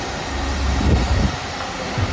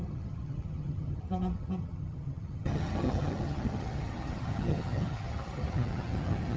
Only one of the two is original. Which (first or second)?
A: first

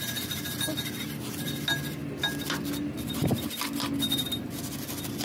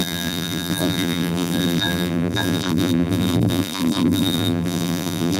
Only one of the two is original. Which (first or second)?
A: first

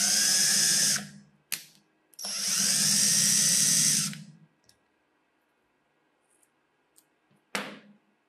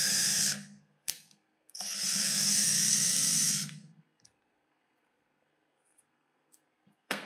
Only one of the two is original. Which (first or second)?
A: first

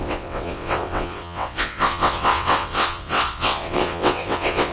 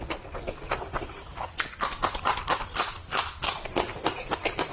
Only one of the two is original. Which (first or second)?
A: second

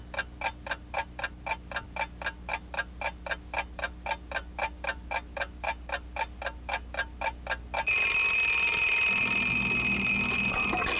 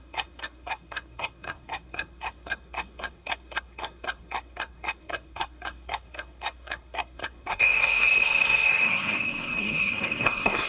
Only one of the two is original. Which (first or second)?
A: first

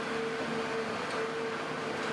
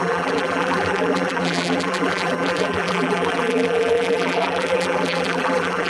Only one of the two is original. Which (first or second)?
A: first